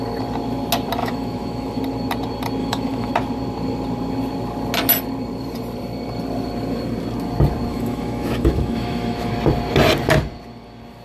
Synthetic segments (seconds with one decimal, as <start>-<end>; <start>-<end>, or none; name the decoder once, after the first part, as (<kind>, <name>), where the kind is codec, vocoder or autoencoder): 1.0-1.8 (autoencoder, DAC-VAE); 2.6-3.1; 7.7-9.3